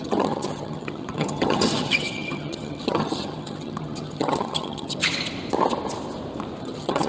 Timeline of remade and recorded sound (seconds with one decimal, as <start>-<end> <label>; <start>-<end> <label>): 0.0-5.0 remade; 5.0-6.6 recorded; 6.6-7.1 remade